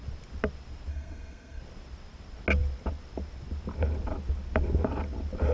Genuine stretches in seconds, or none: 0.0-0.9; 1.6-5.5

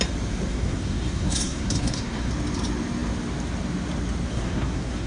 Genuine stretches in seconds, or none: 0.0-0.5; 2.3-4.3